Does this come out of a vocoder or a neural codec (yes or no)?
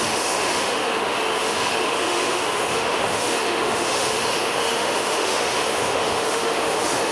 yes